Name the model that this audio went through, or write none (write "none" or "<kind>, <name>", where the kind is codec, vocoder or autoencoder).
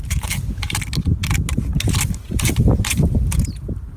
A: vocoder, BigVGAN v2